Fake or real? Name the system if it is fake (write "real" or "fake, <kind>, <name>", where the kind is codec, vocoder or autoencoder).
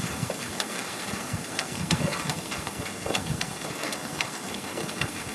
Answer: fake, codec, SNAC